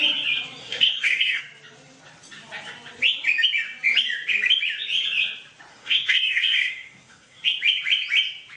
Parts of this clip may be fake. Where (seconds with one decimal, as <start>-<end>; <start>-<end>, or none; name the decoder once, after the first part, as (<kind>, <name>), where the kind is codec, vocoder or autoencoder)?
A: 0.6-1.4 (codec, SNAC); 5.7-7.4